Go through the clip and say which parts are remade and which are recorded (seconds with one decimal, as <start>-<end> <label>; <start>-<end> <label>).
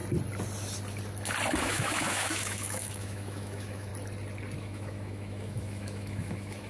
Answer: 0.0-1.6 recorded; 1.6-3.9 remade; 3.9-4.6 recorded; 4.6-6.7 remade